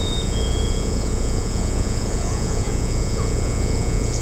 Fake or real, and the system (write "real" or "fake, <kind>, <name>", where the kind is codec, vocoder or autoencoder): fake, vocoder, Vocos